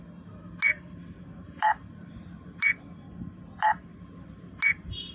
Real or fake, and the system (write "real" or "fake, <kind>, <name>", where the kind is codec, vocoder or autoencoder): real